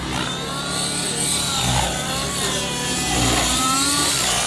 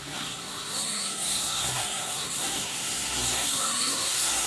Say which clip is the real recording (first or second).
first